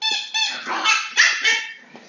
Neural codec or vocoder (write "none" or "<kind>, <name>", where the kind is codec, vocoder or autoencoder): none